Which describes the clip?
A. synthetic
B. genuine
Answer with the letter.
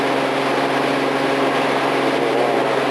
B